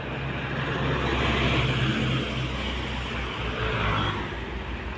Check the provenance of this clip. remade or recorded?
recorded